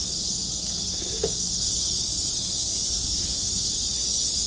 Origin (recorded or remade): remade